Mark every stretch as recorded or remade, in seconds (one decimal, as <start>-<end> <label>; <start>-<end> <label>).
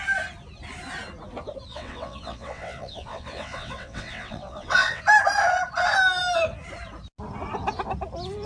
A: 0.0-1.7 recorded; 1.7-5.0 remade; 5.0-8.5 recorded